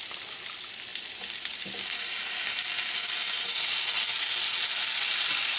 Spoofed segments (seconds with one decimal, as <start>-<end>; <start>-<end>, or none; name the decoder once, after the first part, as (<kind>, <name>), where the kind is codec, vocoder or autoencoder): 0.9-2.4 (vocoder, BigVGAN v2)